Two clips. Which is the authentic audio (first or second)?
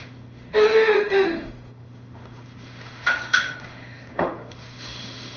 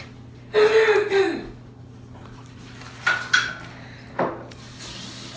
second